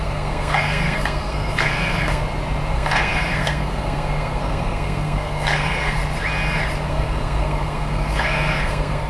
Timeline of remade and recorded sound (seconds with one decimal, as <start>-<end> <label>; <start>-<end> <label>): 0.0-2.2 remade; 2.2-2.7 recorded; 2.7-6.0 remade; 6.0-6.9 recorded; 6.9-9.1 remade